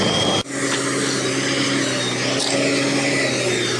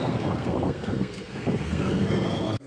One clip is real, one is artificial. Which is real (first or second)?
first